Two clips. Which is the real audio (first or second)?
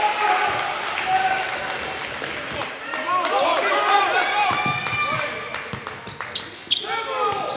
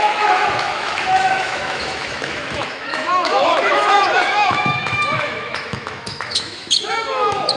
first